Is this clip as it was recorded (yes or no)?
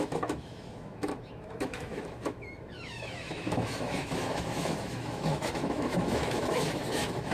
no